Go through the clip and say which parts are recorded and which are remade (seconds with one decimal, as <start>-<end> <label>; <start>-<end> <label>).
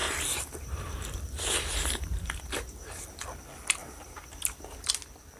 0.0-3.2 remade; 3.2-3.8 recorded; 3.8-4.9 remade; 4.9-5.4 recorded